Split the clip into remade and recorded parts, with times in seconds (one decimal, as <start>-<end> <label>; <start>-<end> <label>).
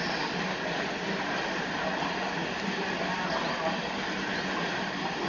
0.0-5.3 recorded